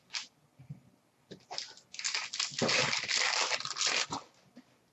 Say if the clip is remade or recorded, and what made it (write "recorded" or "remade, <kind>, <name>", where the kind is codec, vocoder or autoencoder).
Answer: recorded